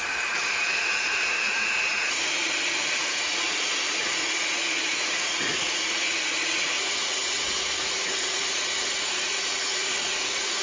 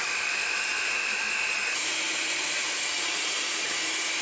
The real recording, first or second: second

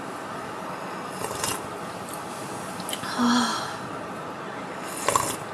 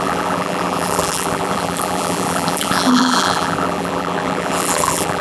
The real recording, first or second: first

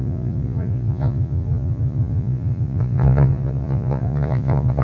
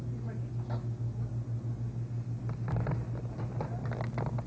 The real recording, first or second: second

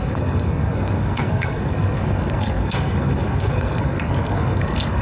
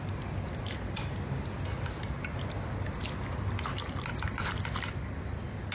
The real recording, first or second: second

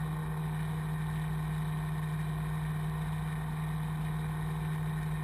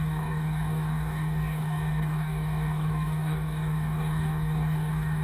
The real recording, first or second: first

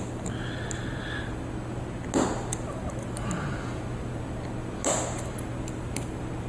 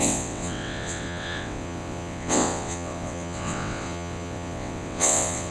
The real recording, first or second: first